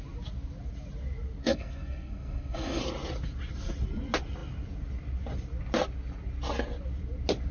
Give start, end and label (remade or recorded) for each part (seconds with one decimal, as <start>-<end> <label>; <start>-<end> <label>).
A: 0.0-1.4 recorded; 1.4-2.8 remade; 2.8-7.5 recorded